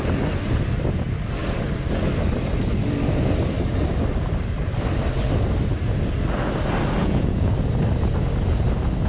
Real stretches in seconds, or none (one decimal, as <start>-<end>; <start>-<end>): 0.0-7.0; 7.5-9.1